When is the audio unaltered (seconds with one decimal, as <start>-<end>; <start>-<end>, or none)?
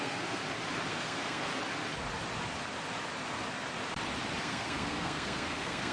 0.4-0.9; 1.5-4.4